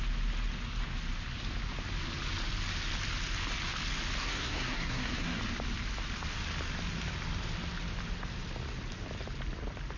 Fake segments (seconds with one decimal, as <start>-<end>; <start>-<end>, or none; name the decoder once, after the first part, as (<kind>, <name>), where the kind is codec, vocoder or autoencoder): 4.2-5.4 (codec, SNAC)